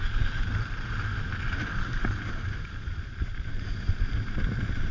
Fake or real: real